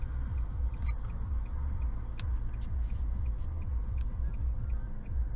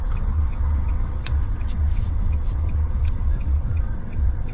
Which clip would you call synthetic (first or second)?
second